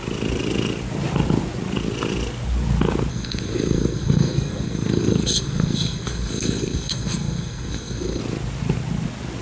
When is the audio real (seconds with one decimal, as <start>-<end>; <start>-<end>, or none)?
0.0-3.1; 8.2-9.4